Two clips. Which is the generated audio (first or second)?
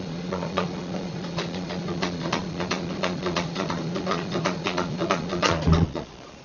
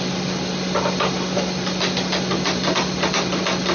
first